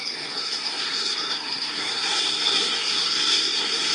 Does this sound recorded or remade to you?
remade